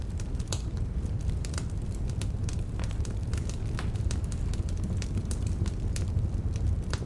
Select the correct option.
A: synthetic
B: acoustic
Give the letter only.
A